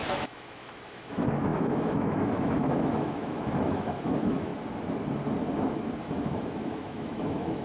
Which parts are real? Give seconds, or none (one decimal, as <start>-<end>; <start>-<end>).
4.5-6.0